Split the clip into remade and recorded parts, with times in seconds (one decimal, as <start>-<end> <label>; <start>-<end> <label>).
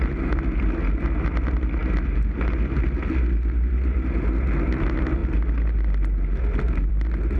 0.0-7.4 recorded